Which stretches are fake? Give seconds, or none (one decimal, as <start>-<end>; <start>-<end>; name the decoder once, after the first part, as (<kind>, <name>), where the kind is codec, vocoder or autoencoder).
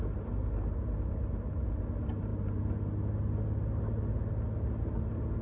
none